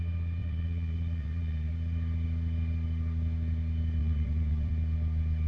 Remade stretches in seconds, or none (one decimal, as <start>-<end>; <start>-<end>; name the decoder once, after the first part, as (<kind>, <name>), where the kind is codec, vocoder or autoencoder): 0.4-1.7 (vocoder, Vocos); 4.0-4.7